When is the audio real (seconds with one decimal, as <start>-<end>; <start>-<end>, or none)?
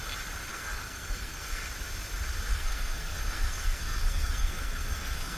0.0-0.5; 1.7-2.5